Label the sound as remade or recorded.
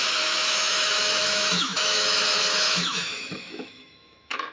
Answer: remade